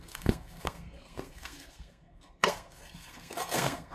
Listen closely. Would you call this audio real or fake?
fake